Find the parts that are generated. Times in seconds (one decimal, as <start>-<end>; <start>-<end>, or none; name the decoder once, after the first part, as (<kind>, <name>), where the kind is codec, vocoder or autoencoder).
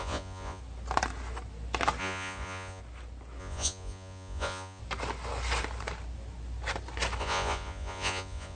0.0-0.6 (vocoder, Vocos); 2.0-2.8; 3.4-4.8; 7.2-8.5